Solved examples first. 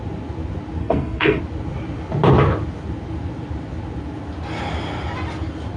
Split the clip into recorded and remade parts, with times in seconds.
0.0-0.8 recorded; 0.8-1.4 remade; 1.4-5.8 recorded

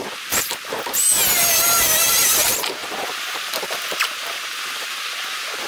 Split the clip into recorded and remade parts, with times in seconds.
0.0-1.2 remade; 1.2-2.1 recorded; 2.1-5.7 remade

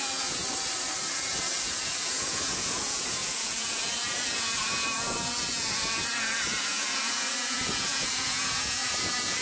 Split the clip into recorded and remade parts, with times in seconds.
0.0-0.4 remade; 0.4-1.0 recorded; 1.0-9.4 remade

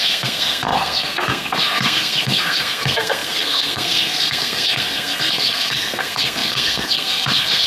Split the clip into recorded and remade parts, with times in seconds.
0.0-7.7 remade

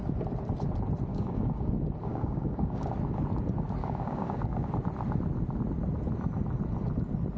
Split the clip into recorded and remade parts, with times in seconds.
0.0-1.1 recorded; 1.1-1.7 remade; 1.7-2.1 recorded; 2.1-2.9 remade; 2.9-3.8 recorded; 3.8-4.7 remade; 4.7-7.4 recorded

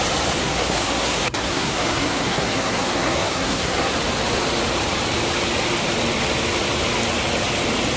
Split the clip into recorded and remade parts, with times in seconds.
0.0-0.4 recorded; 0.4-3.9 remade; 3.9-8.0 recorded

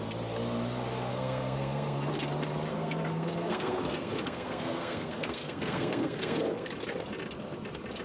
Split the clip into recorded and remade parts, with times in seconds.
0.0-1.1 recorded; 1.1-2.1 remade; 2.1-2.7 recorded; 2.7-6.7 remade; 6.7-8.0 recorded